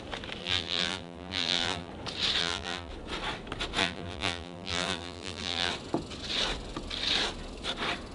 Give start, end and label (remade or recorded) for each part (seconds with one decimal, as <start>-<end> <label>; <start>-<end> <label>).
0.0-0.4 recorded; 0.4-1.9 remade; 1.9-2.4 recorded; 2.4-2.9 remade; 2.9-3.8 recorded; 3.8-5.7 remade; 5.7-8.1 recorded